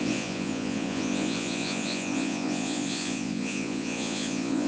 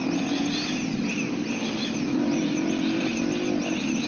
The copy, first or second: first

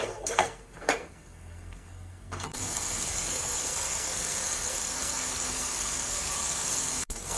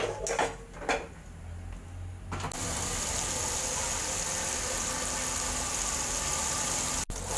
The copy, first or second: first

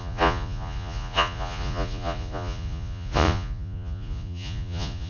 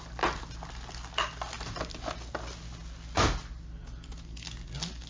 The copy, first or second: first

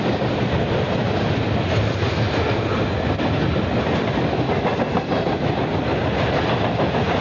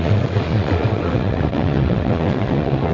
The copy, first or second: second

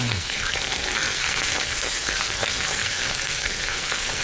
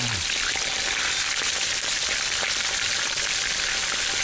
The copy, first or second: first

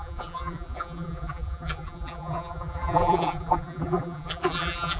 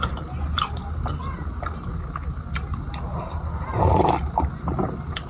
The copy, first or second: first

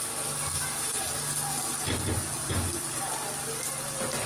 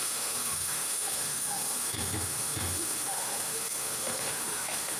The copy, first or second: second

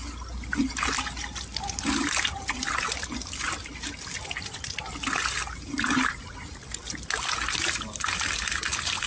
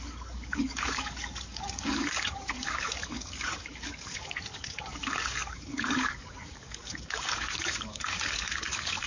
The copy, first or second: second